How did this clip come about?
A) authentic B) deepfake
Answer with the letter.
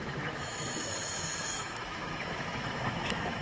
B